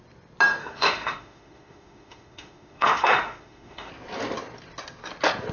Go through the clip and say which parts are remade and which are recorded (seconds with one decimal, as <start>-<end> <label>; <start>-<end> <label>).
0.0-0.6 recorded; 0.6-3.9 remade; 3.9-5.5 recorded